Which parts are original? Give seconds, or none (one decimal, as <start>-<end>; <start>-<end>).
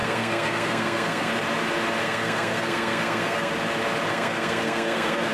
1.3-2.0; 3.5-4.1